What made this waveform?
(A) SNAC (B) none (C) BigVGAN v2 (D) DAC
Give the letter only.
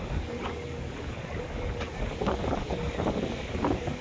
D